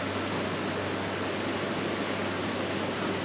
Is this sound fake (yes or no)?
no